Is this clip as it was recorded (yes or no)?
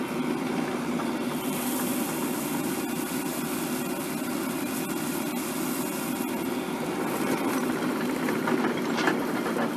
yes